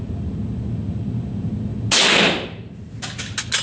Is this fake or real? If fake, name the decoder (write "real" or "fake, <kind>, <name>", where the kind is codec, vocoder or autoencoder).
real